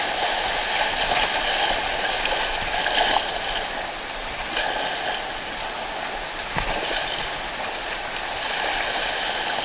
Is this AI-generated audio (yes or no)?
no